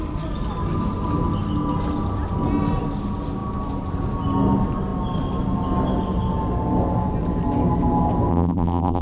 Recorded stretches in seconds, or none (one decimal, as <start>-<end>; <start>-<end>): 0.0-8.3